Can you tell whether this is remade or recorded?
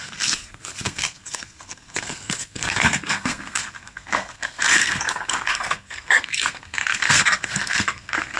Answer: remade